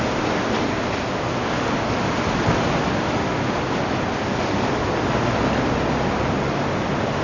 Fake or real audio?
real